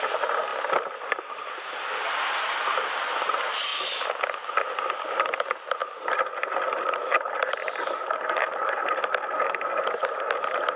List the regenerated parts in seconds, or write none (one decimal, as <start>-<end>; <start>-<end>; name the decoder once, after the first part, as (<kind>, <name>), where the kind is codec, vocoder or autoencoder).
none